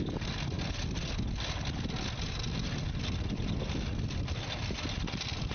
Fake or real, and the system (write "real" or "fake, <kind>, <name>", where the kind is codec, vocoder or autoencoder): real